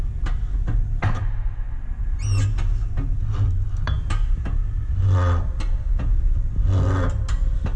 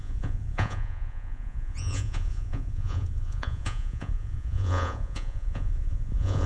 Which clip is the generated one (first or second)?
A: second